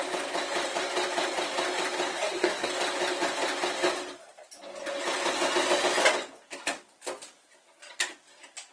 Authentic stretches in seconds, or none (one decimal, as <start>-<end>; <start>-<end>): 0.0-2.1; 2.7-8.7

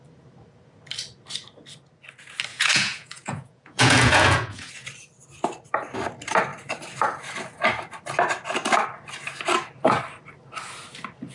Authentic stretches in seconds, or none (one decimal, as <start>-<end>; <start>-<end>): 0.0-2.5; 4.7-11.3

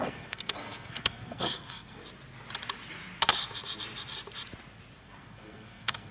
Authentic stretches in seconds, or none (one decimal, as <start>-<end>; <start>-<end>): 2.0-5.0

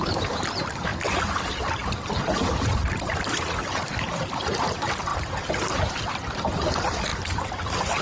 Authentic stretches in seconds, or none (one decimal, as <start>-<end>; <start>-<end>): none

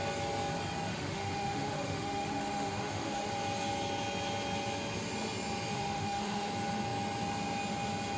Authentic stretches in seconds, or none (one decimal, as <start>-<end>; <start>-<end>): 0.0-0.9; 3.3-5.7; 6.5-8.2